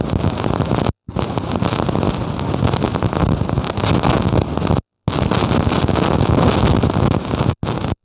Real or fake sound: real